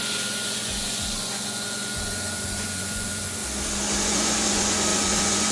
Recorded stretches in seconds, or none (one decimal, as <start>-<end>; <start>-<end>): 3.4-4.0

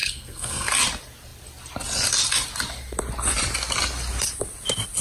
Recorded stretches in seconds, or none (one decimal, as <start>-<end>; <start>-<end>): 0.7-5.0